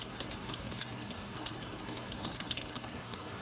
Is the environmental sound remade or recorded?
remade